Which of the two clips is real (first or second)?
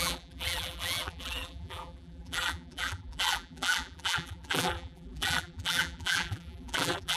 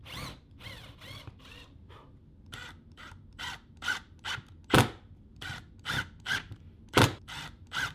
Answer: second